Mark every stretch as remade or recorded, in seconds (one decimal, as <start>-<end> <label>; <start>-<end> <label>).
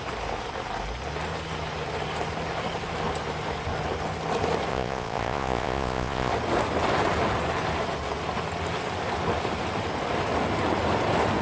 0.0-4.7 recorded; 4.7-6.3 remade; 6.3-11.4 recorded